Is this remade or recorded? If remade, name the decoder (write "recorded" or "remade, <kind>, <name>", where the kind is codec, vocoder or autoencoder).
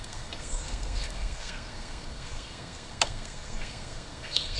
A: remade, codec, SNAC